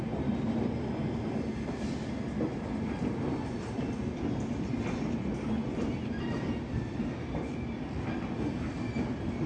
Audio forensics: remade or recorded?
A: recorded